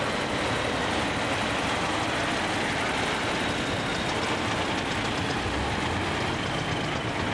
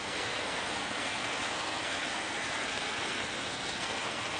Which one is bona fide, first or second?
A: first